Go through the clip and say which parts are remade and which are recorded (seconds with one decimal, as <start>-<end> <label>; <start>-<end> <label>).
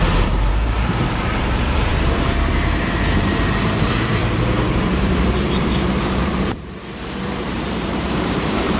0.0-4.1 remade; 4.1-4.8 recorded; 4.8-8.8 remade